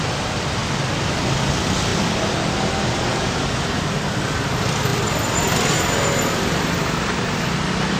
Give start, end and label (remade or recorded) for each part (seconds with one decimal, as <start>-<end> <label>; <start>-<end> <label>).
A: 0.0-8.0 recorded